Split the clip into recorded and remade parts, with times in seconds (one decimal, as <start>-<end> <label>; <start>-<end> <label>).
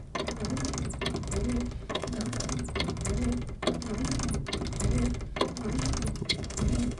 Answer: 0.0-1.9 recorded; 1.9-2.5 remade; 2.5-6.2 recorded; 6.2-7.0 remade